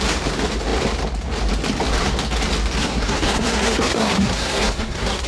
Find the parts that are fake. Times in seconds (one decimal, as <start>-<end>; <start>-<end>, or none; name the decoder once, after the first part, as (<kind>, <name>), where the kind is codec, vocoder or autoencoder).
2.8-5.3 (codec, SNAC)